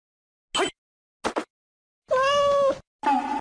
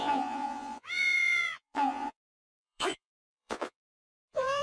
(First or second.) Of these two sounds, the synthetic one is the second